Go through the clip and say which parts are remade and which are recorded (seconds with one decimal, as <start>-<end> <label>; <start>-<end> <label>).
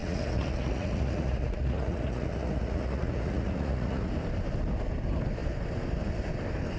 0.0-4.1 remade; 4.1-6.8 recorded